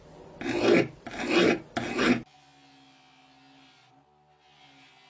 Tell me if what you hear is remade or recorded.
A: recorded